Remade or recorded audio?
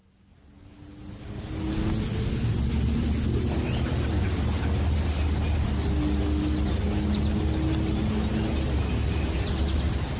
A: recorded